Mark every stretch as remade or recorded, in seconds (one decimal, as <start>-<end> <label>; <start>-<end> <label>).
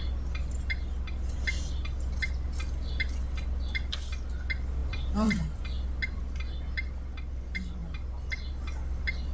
0.0-4.8 recorded; 4.8-5.6 remade; 5.6-9.3 recorded